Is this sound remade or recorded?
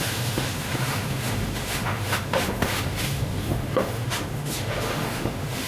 remade